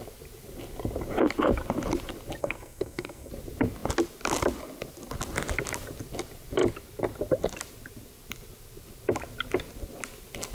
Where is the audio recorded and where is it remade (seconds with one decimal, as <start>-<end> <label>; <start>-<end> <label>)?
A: 0.0-2.4 recorded; 2.4-3.3 remade; 3.3-10.5 recorded